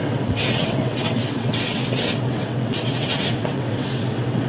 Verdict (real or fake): fake